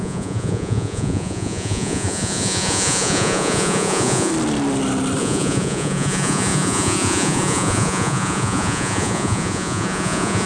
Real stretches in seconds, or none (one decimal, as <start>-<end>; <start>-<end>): 4.3-5.2